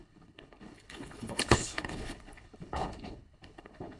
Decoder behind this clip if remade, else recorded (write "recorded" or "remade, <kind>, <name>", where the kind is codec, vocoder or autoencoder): remade, codec, HILCodec